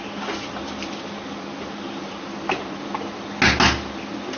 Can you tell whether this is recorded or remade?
recorded